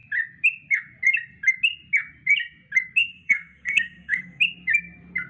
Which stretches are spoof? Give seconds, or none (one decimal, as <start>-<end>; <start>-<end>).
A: 3.0-4.4